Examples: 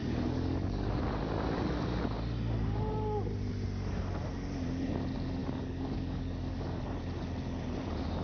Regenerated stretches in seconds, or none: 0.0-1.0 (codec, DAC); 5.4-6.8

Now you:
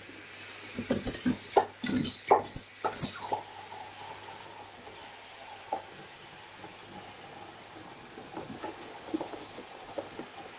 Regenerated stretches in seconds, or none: none

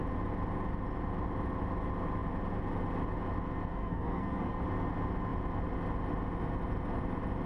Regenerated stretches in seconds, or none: 3.7-4.6 (codec, SNAC)

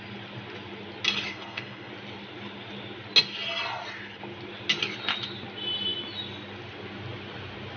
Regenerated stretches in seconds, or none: 1.3-1.9 (codec, SNAC)